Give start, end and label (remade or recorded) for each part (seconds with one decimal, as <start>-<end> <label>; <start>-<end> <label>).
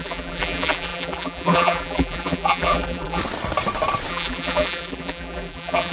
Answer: 0.0-3.2 remade; 3.2-4.1 recorded; 4.1-5.9 remade